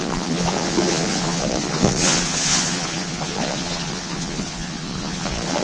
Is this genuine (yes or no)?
no